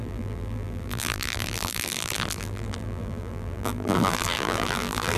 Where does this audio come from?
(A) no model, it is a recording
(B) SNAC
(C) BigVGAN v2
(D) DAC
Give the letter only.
C